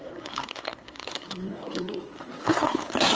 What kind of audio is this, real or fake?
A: fake